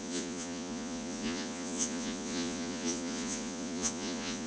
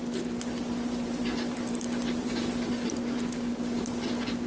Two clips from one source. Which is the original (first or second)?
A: second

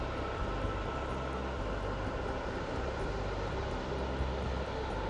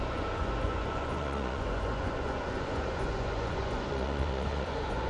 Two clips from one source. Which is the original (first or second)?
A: first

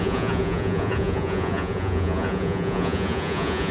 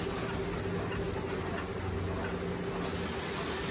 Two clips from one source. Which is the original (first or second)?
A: second